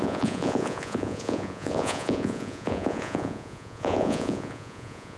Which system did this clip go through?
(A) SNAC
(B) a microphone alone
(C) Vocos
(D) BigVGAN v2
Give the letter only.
C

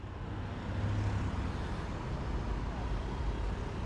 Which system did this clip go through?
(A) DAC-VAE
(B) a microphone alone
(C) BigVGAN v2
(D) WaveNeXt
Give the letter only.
B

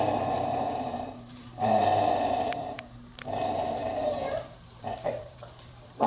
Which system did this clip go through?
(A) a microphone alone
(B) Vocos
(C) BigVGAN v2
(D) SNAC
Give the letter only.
C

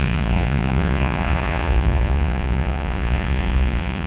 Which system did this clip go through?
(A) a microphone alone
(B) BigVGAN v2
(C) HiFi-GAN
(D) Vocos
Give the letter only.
D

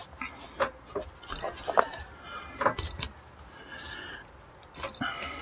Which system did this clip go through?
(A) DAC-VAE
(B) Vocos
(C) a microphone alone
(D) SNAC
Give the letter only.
C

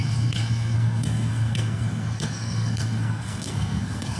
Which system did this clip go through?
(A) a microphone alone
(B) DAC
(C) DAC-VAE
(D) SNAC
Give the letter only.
D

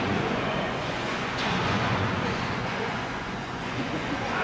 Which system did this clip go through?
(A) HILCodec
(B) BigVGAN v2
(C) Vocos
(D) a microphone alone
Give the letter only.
C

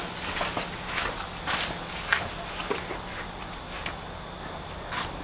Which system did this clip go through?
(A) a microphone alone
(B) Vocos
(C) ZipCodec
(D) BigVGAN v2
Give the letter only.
A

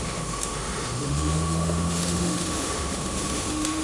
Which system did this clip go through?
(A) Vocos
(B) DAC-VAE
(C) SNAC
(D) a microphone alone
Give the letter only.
B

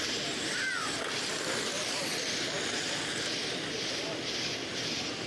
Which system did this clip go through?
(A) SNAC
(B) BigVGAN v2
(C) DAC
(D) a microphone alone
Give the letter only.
D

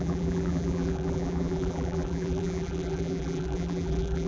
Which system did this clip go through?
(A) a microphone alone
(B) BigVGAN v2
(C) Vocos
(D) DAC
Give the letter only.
B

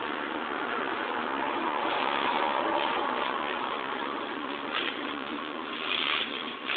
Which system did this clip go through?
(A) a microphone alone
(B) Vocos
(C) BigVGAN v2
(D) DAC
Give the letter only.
B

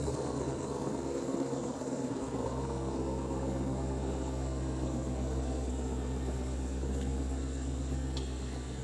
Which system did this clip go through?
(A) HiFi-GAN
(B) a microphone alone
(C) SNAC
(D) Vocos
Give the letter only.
C